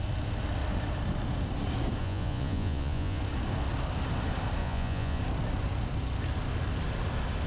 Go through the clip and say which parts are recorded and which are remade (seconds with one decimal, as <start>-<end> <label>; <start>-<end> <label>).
0.0-2.0 recorded; 2.0-3.2 remade; 3.2-4.6 recorded; 4.6-5.2 remade; 5.2-7.5 recorded